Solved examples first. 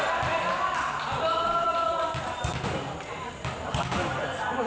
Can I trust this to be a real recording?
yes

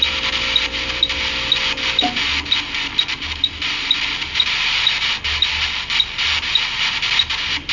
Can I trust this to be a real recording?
yes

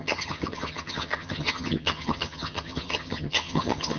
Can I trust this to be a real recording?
no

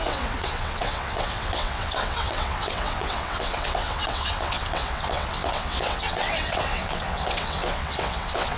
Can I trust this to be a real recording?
no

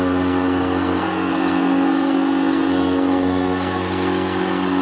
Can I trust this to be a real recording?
no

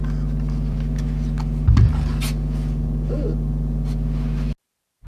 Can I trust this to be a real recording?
yes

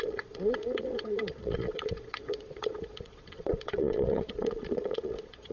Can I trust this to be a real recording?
no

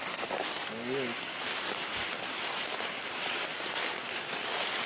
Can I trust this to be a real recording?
no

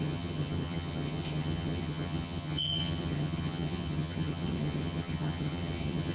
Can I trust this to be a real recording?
no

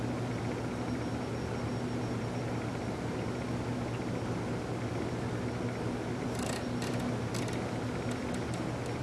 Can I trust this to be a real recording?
yes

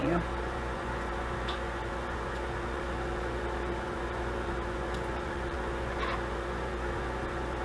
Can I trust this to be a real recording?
no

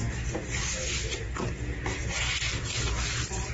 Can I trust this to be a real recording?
yes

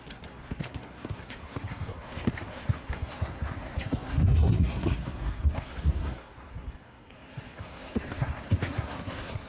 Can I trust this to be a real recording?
no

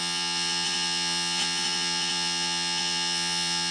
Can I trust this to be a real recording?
no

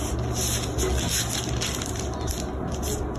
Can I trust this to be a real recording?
yes